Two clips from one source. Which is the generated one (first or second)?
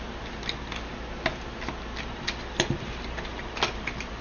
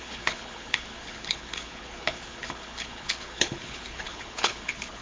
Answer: second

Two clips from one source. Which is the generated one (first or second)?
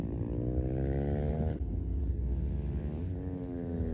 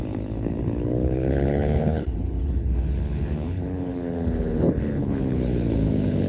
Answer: second